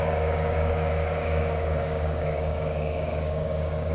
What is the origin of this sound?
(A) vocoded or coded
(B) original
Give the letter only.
A